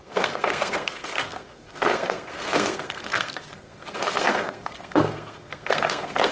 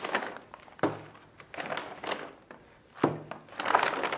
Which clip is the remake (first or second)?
first